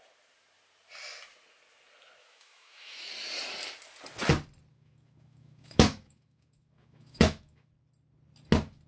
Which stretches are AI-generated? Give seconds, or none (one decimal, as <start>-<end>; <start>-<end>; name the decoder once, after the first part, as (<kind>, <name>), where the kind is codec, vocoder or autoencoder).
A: 2.2-3.1 (autoencoder, DAC-VAE); 4.7-7.7